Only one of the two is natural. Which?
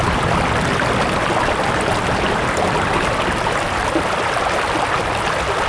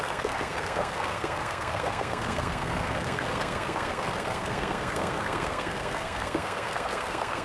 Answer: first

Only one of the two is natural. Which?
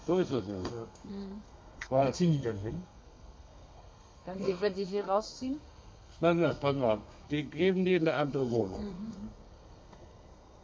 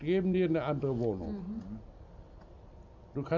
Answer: second